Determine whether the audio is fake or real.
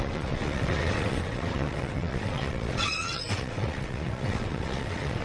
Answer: fake